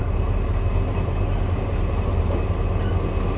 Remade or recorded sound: recorded